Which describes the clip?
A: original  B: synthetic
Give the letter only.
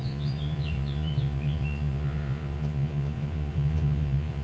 B